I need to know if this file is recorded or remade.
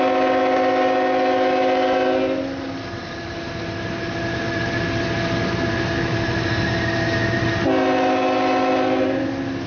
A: recorded